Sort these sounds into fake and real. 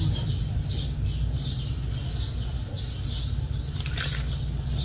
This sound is real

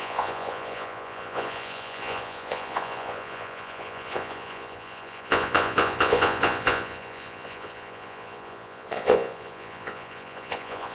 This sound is fake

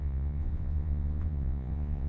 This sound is fake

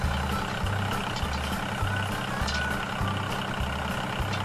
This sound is real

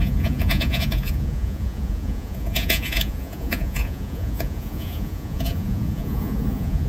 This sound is fake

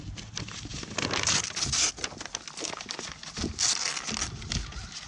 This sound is real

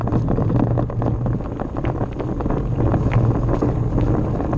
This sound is real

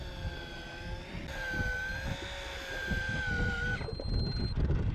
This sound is real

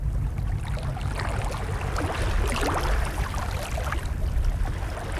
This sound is real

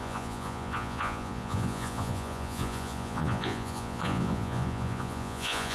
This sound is fake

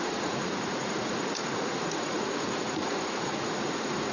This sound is fake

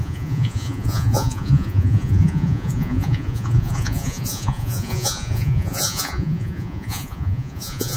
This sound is fake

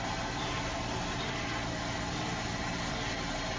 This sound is real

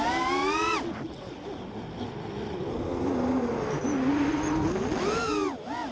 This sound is real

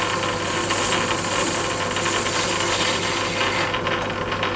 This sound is real